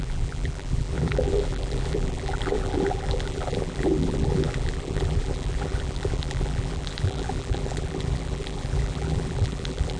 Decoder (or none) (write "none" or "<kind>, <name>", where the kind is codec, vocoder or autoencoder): vocoder, BigVGAN v2